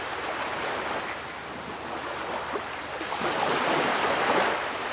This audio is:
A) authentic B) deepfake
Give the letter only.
A